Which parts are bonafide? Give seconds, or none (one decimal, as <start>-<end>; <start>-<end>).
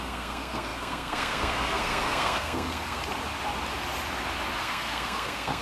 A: 3.0-4.6